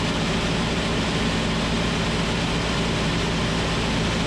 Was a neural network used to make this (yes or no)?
yes